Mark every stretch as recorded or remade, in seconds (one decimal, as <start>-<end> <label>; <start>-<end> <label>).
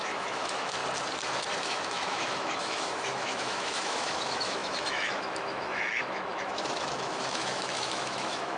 0.0-0.8 remade; 0.8-1.6 recorded; 1.6-8.6 remade